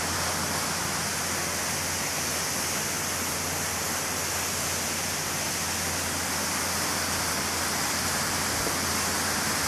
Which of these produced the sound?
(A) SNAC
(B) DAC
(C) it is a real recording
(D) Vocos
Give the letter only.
C